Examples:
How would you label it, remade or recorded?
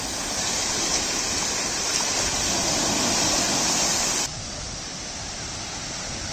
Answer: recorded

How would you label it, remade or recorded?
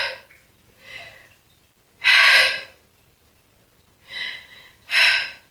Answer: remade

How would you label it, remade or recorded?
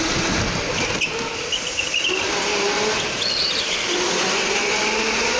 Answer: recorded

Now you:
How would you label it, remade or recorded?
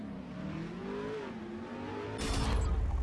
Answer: recorded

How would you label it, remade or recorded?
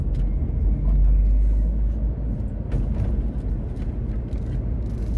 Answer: recorded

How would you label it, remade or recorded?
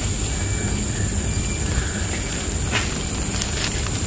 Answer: recorded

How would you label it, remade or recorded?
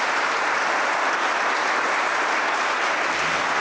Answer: recorded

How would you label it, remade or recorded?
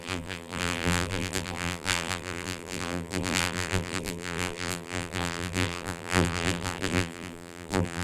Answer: remade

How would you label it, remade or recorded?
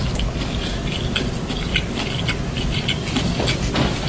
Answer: recorded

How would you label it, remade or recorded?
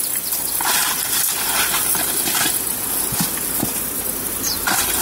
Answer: remade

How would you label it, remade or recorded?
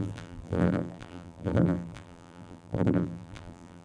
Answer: remade